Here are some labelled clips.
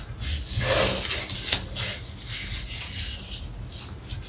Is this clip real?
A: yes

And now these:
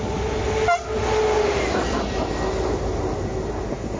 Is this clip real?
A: yes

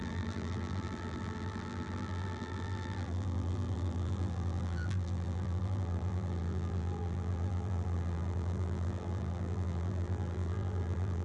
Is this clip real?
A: no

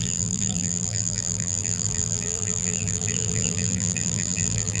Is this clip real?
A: no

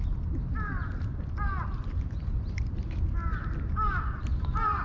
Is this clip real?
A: no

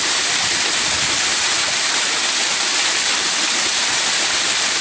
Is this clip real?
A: no